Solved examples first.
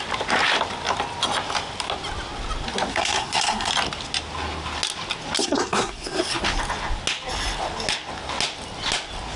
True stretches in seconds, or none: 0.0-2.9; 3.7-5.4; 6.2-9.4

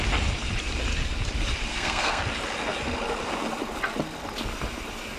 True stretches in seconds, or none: 0.0-1.7; 2.2-5.2

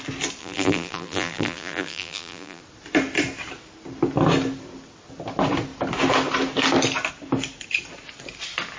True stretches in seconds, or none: 0.0-0.4; 2.6-8.8